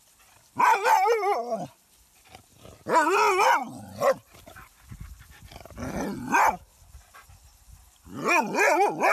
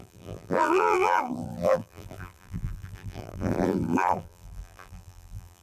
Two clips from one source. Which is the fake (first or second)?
second